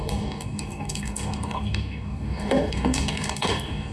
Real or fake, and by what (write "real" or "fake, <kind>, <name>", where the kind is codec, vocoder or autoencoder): fake, codec, DAC